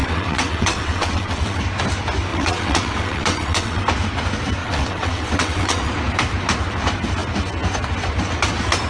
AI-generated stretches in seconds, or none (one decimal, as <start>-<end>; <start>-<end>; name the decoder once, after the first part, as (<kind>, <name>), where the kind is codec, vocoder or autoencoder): 0.0-1.6 (vocoder, WaveNeXt); 2.3-3.8; 4.6-5.9